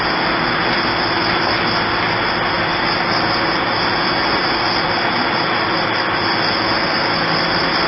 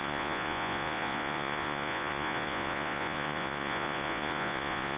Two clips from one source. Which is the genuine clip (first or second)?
first